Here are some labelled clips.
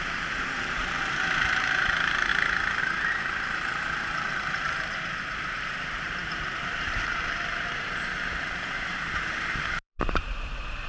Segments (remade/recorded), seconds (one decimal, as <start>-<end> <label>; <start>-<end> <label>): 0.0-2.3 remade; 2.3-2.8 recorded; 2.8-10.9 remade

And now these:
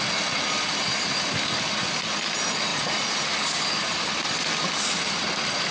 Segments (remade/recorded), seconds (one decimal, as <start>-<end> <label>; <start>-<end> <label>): 0.0-5.7 recorded

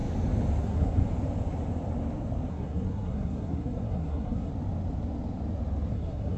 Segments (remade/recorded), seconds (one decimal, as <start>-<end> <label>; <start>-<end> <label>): 0.0-0.6 recorded; 0.6-1.0 remade; 1.0-2.5 recorded; 2.5-4.5 remade; 4.5-5.9 recorded; 5.9-6.4 remade